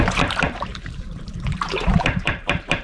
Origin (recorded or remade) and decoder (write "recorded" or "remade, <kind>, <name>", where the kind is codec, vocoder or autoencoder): remade, vocoder, BigVGAN v2